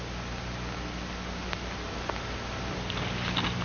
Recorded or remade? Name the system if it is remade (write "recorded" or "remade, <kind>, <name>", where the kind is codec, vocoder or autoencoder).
recorded